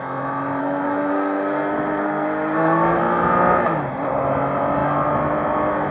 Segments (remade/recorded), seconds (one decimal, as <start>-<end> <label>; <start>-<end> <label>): 0.0-0.6 recorded; 0.6-3.0 remade; 3.0-5.9 recorded